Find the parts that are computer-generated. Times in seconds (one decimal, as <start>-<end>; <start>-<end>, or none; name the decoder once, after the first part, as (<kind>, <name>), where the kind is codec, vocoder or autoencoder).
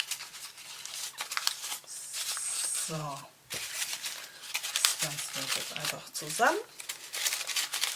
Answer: 1.8-4.1 (vocoder, BigVGAN v2)